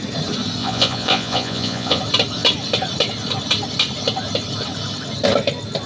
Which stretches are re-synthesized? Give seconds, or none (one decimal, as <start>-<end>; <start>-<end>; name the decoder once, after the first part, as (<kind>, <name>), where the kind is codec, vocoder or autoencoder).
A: 0.6-2.0 (vocoder, Vocos)